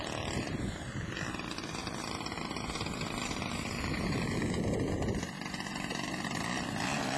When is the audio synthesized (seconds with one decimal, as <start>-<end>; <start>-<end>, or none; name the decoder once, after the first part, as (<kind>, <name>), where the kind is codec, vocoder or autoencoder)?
1.8-4.4 (vocoder, BigVGAN v2); 5.7-6.4